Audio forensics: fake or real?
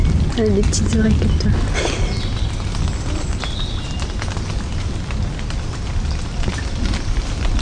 real